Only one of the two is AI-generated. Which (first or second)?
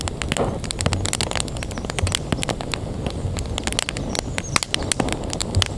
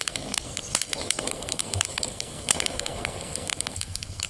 second